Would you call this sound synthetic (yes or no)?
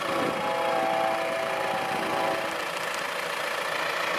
no